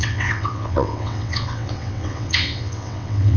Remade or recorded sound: remade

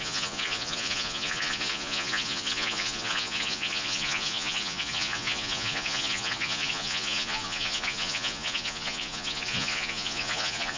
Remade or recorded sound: remade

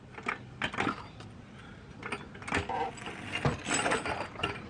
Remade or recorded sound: recorded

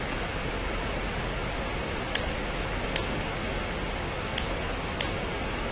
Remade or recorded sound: recorded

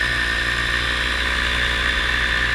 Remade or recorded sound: recorded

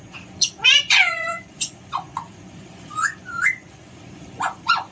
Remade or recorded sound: remade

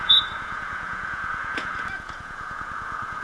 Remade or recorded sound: remade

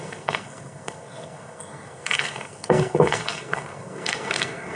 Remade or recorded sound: remade